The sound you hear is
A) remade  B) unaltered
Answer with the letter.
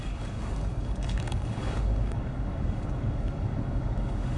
A